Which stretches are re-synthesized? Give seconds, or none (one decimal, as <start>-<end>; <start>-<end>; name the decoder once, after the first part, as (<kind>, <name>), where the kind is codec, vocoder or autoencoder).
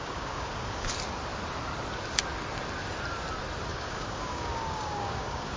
0.0-0.9 (codec, DAC); 3.7-5.6